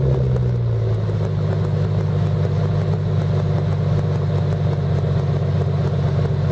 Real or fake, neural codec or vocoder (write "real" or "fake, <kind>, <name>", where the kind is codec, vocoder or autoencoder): real